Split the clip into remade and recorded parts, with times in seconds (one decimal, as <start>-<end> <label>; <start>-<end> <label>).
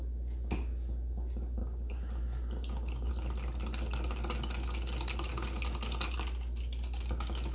0.0-1.6 recorded; 1.6-3.1 remade; 3.1-7.5 recorded